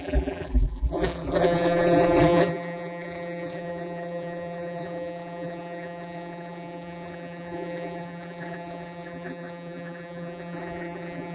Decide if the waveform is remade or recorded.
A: remade